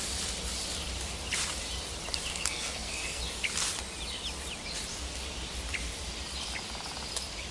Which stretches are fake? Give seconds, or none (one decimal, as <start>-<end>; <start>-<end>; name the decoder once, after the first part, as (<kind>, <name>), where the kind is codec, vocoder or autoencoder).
2.3-3.2 (codec, SNAC)